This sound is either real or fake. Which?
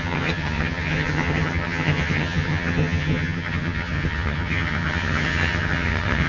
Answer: fake